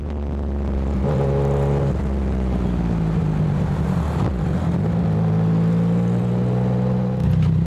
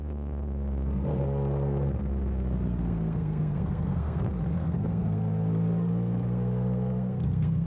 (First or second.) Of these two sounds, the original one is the first